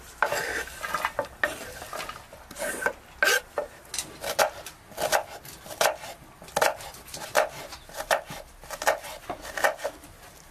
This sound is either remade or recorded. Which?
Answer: recorded